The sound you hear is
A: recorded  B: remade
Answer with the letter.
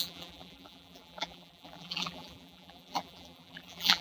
B